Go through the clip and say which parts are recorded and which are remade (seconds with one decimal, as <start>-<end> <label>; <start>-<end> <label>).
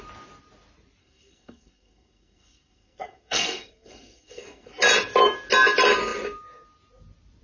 0.0-1.0 recorded; 1.0-4.8 remade; 4.8-7.4 recorded